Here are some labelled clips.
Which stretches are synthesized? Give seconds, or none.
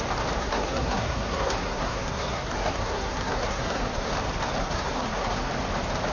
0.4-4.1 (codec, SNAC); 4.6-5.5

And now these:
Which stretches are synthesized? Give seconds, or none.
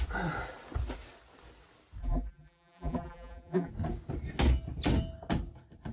2.0-3.7 (vocoder, BigVGAN v2)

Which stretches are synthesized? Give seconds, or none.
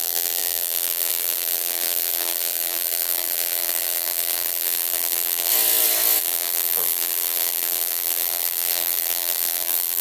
0.0-5.5 (vocoder, BigVGAN v2); 6.2-10.0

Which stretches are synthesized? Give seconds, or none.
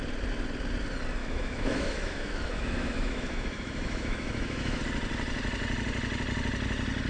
1.2-4.8 (autoencoder, DAC-VAE)